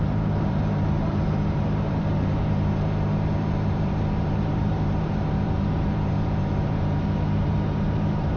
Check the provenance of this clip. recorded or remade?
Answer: remade